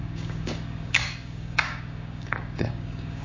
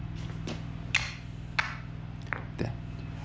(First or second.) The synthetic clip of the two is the first